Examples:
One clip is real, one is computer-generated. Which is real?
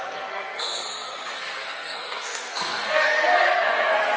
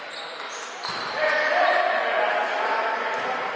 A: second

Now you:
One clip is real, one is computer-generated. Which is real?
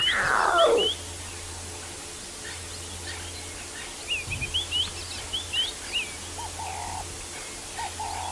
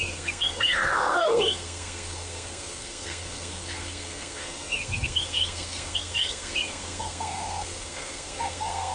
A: first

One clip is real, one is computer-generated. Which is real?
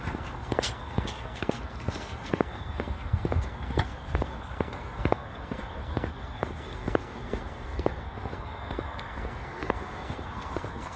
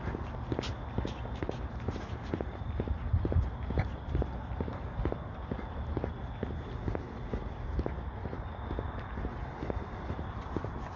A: second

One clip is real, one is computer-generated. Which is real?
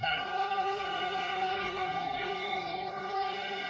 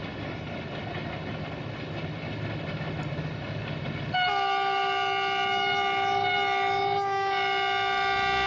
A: second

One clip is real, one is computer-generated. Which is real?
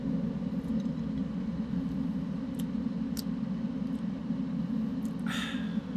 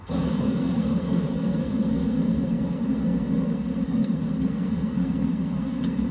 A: first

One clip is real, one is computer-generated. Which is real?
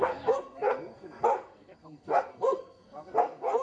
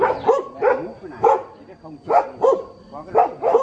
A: second